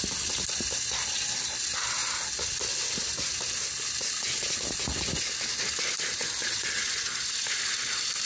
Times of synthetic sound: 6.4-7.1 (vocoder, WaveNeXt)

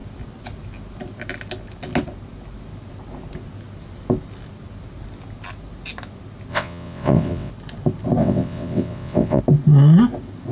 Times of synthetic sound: 6.5-7.5 (vocoder, WaveNeXt); 8.2-9.4

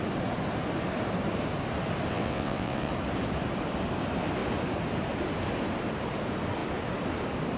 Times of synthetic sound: 2.1-2.9 (vocoder, WaveNeXt)

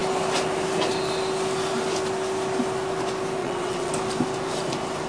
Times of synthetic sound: 3.4-3.9 (vocoder, WaveNeXt)

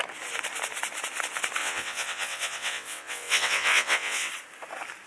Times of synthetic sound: 1.6-4.3 (vocoder, WaveNeXt)

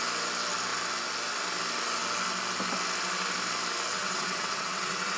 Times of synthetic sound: 3.9-5.2 (vocoder, WaveNeXt)

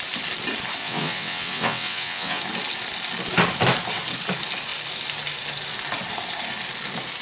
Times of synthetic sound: 0.8-2.4 (vocoder, WaveNeXt)